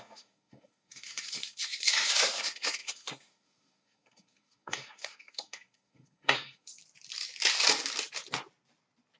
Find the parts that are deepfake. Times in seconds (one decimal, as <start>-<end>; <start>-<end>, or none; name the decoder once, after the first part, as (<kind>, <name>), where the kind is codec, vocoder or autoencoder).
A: 0.0-6.8 (codec, SNAC)